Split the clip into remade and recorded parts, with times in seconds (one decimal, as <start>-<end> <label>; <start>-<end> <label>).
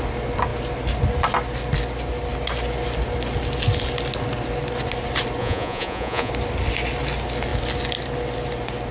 0.0-5.4 recorded; 5.4-6.3 remade; 6.3-8.9 recorded